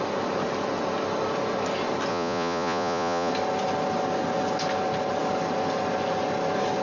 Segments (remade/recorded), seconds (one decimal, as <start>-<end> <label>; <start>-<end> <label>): 0.0-2.1 recorded; 2.1-3.3 remade; 3.3-6.8 recorded